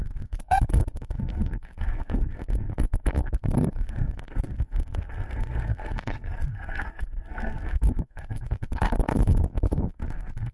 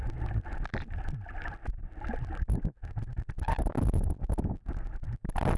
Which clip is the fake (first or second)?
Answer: first